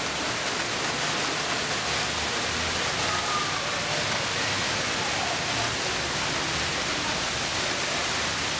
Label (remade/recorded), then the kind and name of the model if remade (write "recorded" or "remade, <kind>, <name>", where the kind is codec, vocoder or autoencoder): recorded